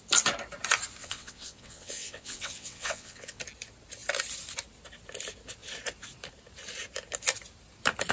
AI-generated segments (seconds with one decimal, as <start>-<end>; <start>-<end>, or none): 1.0-3.4